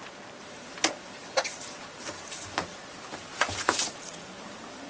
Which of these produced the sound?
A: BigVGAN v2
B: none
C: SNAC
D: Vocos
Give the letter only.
A